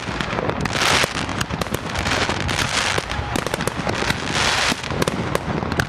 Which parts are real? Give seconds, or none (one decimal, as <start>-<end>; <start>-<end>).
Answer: 0.0-1.3; 4.8-5.9